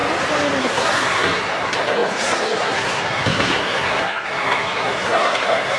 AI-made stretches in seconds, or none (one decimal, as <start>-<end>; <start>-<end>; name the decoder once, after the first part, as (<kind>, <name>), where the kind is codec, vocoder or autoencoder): 0.6-5.8 (codec, SNAC)